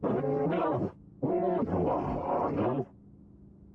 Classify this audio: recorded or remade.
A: recorded